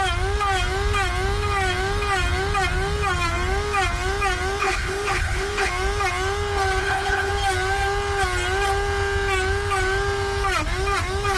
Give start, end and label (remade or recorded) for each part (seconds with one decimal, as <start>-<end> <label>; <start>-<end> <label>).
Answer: 0.0-4.6 recorded; 4.6-5.7 remade; 5.7-6.8 recorded; 6.8-7.3 remade; 7.3-11.4 recorded